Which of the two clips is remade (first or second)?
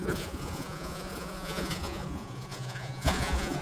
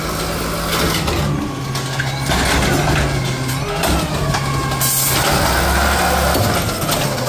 first